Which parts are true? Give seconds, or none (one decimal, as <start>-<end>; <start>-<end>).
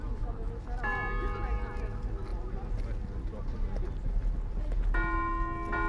0.0-5.9